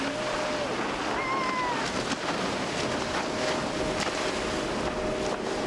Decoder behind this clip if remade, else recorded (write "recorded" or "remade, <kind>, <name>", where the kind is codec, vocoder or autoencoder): recorded